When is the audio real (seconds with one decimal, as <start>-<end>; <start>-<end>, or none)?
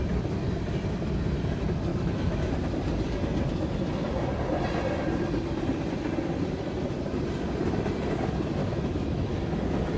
0.0-1.9; 2.5-8.6; 9.4-10.0